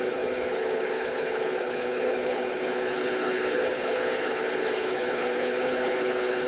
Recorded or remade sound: remade